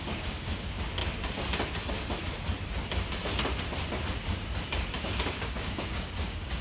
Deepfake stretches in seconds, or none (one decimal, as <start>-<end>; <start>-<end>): 0.0-1.0; 5.0-6.6